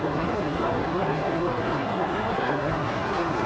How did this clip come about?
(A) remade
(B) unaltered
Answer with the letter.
A